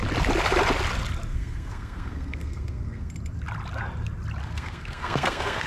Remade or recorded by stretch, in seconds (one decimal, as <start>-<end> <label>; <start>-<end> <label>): 0.0-1.3 recorded; 1.3-3.1 remade; 3.1-4.4 recorded; 4.4-5.7 remade